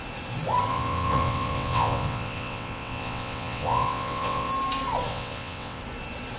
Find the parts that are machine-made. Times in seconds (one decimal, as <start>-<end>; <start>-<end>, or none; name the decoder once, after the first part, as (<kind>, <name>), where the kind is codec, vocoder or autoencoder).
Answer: 0.7-4.5 (vocoder, WaveNeXt); 5.1-5.8